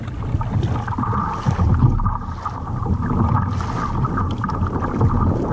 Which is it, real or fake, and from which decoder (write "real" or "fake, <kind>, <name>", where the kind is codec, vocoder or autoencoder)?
real